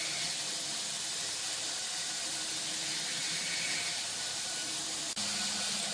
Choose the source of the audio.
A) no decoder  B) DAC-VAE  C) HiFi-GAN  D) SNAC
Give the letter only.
A